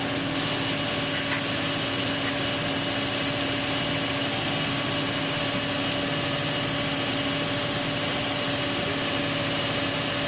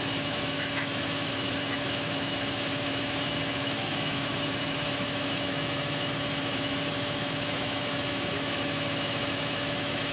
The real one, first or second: first